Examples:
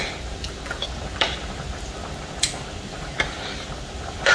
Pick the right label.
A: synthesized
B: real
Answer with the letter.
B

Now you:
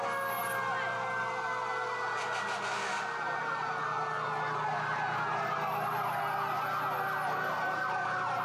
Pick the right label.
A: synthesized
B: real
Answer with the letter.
B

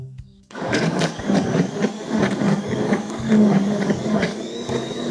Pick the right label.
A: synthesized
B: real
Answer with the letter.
A